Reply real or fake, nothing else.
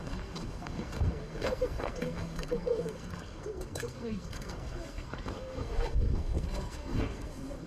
fake